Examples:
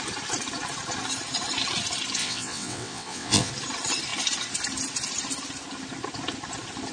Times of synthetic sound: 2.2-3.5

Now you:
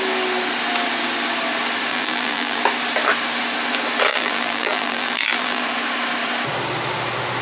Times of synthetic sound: 1.9-2.6; 4.1-5.6

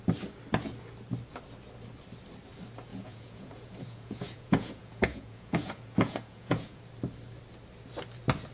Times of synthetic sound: 2.9-6.8

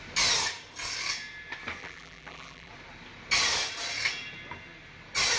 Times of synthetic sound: 1.8-2.7

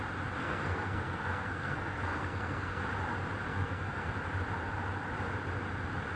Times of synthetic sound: 0.4-2.8; 3.5-4.1